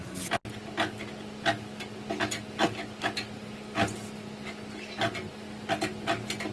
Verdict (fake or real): real